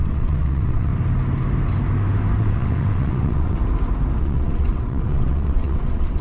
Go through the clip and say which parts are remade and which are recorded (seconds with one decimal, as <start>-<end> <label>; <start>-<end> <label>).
0.0-0.9 remade; 0.9-2.4 recorded; 2.4-3.6 remade; 3.6-4.2 recorded; 4.2-6.2 remade